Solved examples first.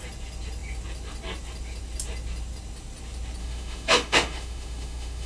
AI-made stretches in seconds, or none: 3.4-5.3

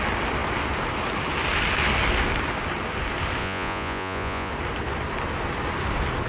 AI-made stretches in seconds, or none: 3.4-4.5

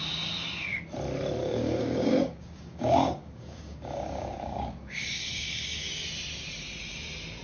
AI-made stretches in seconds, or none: 1.4-5.8

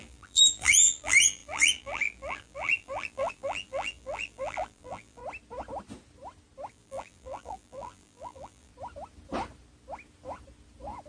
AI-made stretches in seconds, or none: 0.0-5.2; 6.7-8.7

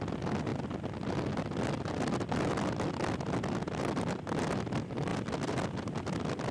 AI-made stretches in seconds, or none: none

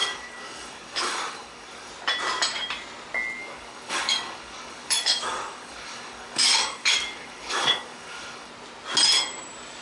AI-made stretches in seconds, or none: 0.0-1.9; 3.4-8.5

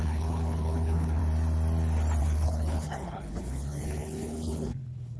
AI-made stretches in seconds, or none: 0.0-1.2; 2.2-5.2

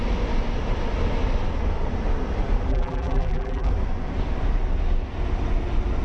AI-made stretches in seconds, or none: 2.7-3.7